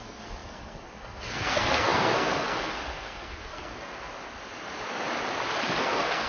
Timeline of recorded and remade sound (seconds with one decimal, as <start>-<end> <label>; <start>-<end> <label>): 0.0-4.1 remade; 4.1-5.8 recorded; 5.8-6.3 remade